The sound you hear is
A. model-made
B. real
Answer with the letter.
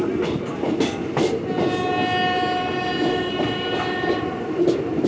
B